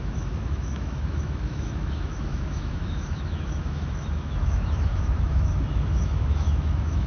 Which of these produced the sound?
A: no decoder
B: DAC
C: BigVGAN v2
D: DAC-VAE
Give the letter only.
D